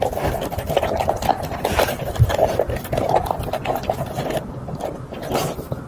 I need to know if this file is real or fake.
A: real